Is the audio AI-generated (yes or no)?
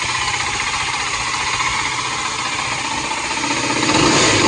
no